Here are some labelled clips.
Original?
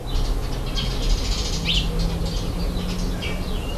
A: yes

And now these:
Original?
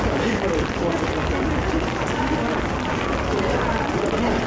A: yes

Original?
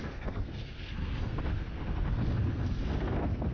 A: no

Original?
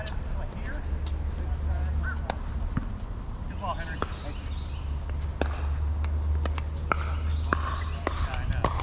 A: yes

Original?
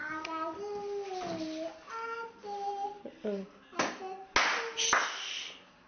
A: yes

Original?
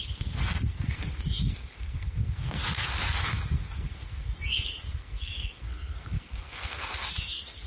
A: no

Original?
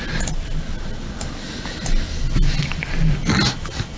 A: yes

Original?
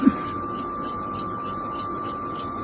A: yes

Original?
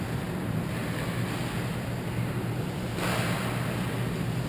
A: yes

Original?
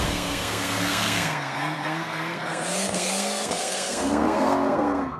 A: no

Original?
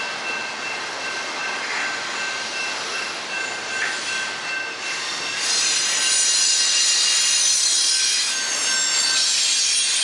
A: yes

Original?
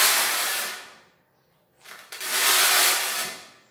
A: yes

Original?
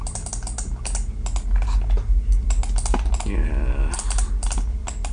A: yes